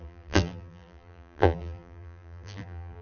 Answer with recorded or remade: remade